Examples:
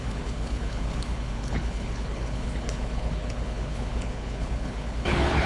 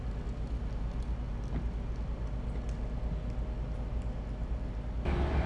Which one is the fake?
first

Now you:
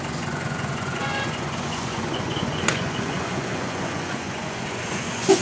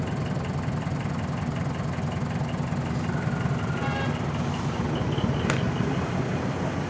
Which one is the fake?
first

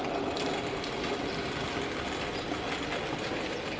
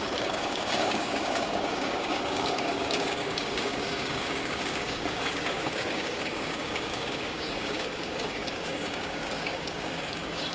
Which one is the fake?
second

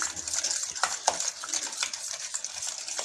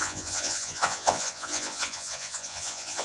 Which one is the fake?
second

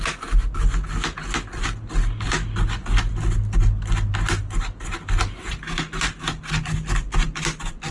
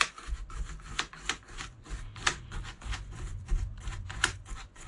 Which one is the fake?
second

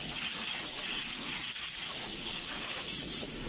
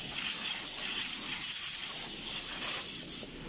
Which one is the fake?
first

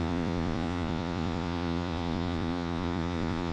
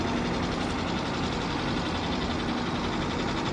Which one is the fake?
first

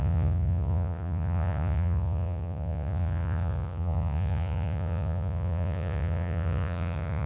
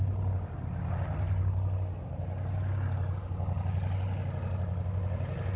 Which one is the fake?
first